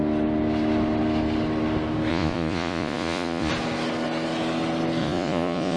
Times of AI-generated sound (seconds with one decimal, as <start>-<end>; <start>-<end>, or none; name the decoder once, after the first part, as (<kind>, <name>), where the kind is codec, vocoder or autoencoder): 2.1-3.5 (vocoder, Vocos); 5.0-5.8